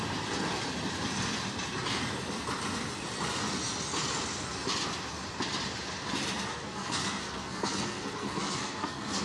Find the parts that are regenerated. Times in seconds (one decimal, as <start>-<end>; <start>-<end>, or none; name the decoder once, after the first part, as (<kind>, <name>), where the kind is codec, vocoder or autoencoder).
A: 6.5-9.2 (codec, SNAC)